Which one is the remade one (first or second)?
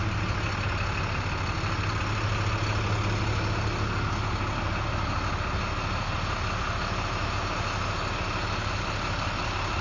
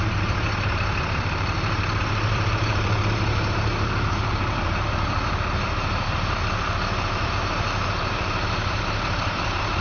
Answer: second